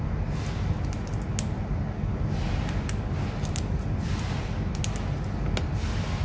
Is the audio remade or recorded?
recorded